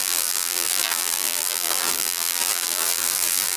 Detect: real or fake fake